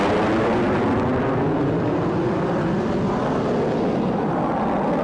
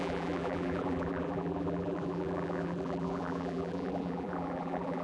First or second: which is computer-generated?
second